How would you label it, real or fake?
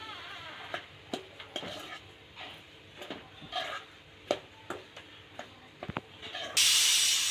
real